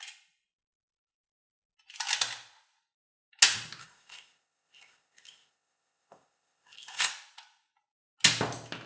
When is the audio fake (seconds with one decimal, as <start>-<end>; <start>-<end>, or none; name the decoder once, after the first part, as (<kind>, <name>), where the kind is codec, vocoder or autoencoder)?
3.8-7.1 (codec, ZipCodec)